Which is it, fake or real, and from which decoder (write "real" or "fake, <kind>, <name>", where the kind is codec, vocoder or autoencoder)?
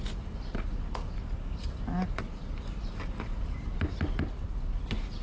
real